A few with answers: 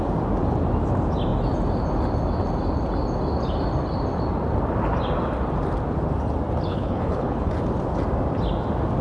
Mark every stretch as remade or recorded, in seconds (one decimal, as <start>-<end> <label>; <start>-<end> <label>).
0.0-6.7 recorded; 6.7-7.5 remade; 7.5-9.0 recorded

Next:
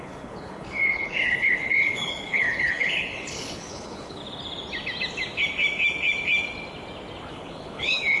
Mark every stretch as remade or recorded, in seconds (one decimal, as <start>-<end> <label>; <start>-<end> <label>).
0.0-4.2 remade; 4.2-7.3 recorded; 7.3-8.2 remade

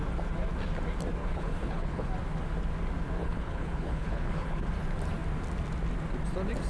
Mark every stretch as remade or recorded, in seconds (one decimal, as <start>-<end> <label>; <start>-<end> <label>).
0.0-1.2 recorded; 1.2-2.1 remade; 2.1-3.2 recorded; 3.2-4.6 remade; 4.6-6.7 recorded

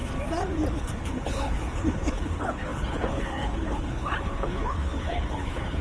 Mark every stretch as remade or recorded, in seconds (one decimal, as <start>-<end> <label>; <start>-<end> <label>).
0.0-0.7 recorded; 0.7-5.8 remade

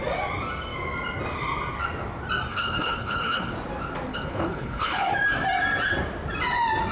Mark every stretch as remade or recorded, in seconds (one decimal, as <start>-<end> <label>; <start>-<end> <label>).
0.0-2.5 recorded; 2.5-3.5 remade; 3.5-4.1 recorded; 4.1-5.1 remade; 5.1-6.9 recorded

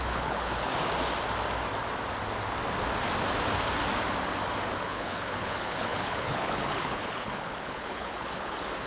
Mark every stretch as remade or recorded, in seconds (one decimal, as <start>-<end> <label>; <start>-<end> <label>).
0.0-0.7 remade; 0.7-4.8 recorded; 4.8-8.9 remade

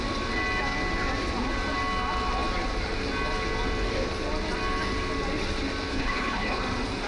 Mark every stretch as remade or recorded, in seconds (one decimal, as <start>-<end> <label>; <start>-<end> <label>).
0.0-5.9 recorded; 5.9-6.6 remade; 6.6-7.1 recorded